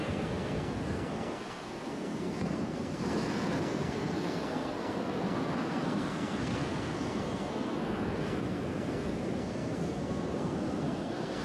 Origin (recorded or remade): remade